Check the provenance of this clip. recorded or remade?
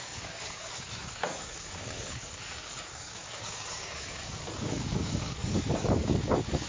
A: remade